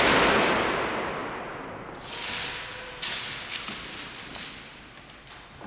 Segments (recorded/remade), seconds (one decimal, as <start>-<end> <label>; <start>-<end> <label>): 0.0-5.7 recorded